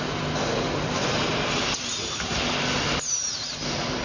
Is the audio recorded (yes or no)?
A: no